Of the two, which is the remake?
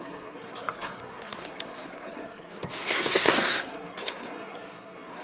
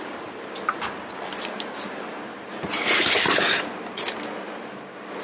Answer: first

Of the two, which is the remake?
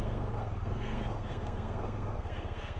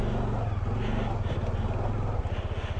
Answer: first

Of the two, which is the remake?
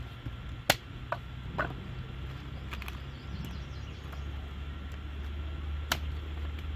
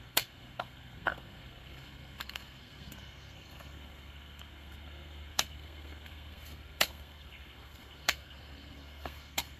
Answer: second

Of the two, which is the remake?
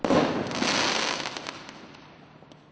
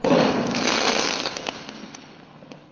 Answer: second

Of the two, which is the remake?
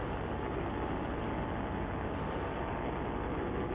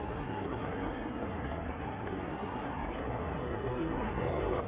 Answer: second